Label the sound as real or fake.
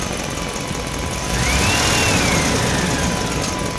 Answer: real